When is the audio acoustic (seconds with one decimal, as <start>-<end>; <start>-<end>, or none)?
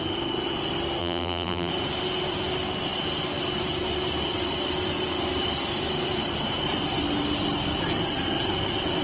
0.0-1.0; 1.7-9.0